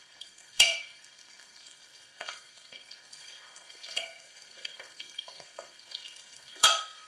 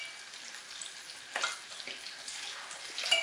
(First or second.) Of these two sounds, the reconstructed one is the first